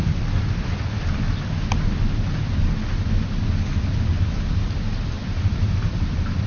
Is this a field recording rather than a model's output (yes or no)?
yes